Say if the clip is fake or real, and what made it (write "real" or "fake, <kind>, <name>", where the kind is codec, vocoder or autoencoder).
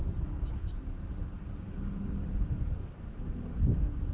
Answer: real